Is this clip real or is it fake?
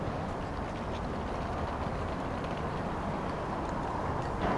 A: real